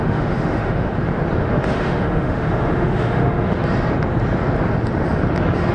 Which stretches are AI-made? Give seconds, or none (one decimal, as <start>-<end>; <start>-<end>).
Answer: 0.0-0.9; 1.4-3.6